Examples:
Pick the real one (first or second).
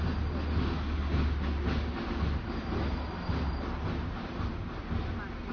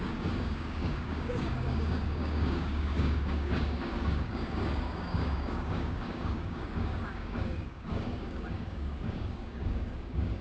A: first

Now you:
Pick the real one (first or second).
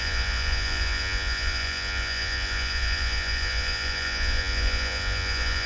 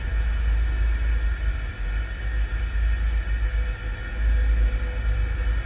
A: second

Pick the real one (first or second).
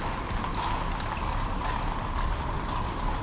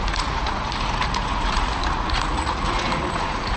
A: first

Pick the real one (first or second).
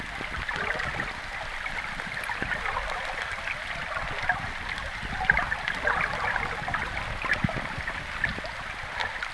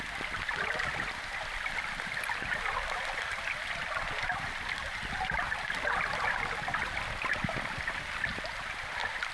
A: first